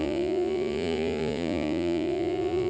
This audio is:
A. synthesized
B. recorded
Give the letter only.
A